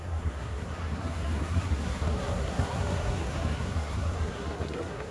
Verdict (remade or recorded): remade